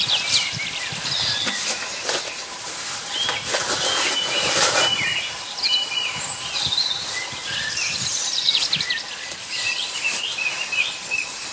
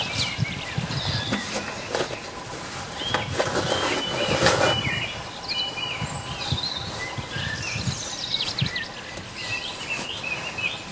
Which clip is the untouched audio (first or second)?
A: second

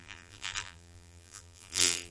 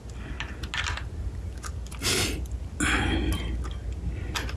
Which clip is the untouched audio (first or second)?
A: second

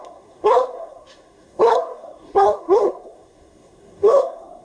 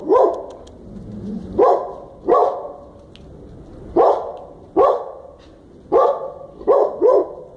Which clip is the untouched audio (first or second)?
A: second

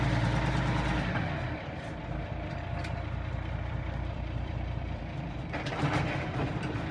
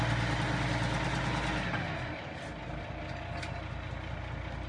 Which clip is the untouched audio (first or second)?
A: second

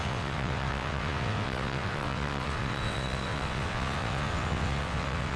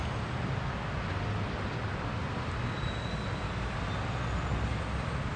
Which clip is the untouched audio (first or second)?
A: second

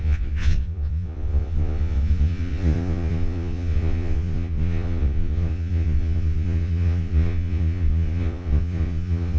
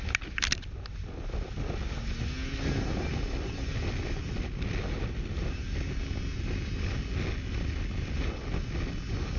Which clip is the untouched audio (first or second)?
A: second